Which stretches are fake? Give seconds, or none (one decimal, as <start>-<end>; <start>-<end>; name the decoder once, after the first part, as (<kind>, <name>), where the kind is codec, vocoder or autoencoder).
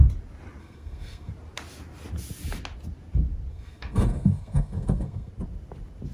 0.6-1.3 (codec, SNAC); 3.5-5.3